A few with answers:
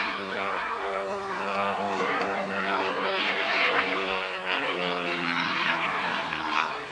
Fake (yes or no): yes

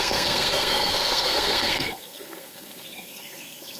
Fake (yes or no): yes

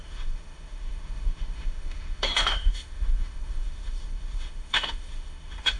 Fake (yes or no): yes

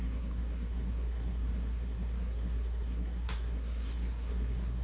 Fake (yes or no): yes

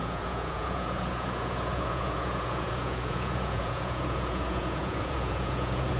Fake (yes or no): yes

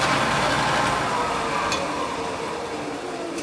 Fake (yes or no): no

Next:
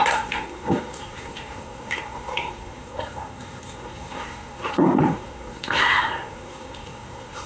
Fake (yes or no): yes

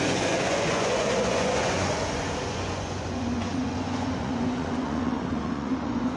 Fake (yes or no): yes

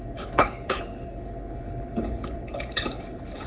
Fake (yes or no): yes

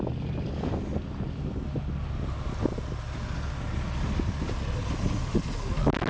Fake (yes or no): no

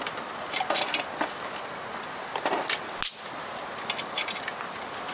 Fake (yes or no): no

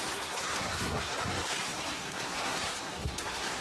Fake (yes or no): yes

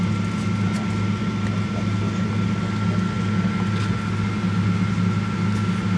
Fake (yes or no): no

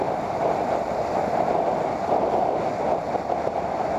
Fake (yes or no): no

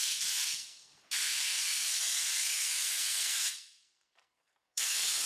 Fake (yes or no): yes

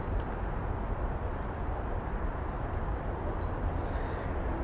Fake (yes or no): no